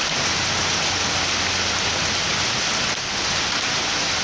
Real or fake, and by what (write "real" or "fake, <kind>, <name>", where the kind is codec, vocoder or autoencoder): real